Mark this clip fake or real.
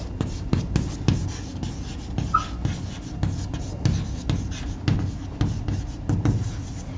real